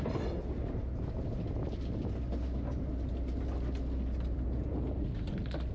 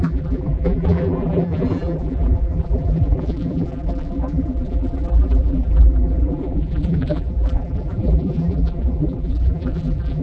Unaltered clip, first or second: first